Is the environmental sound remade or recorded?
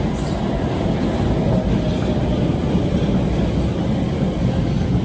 recorded